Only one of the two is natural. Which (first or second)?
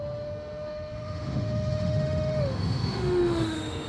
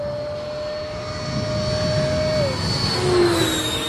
second